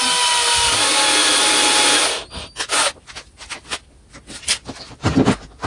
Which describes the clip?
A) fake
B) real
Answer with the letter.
B